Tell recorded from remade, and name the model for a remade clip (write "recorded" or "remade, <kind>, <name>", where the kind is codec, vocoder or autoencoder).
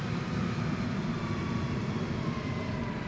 remade, vocoder, BigVGAN v2